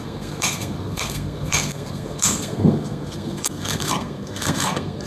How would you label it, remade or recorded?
remade